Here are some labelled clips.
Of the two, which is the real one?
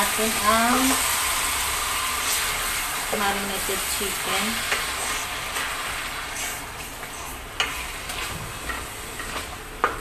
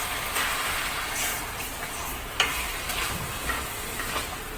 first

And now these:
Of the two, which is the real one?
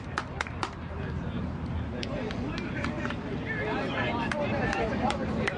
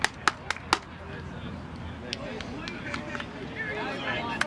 second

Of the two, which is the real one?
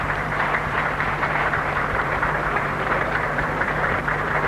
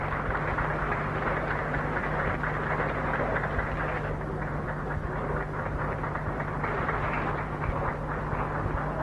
second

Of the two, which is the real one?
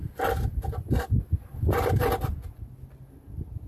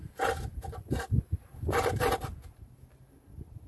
first